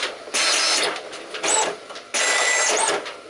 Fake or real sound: real